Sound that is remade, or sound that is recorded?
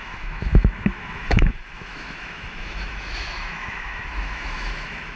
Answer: remade